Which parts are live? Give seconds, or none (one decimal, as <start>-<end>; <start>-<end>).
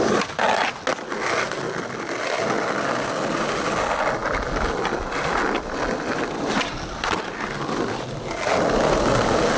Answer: 0.0-9.6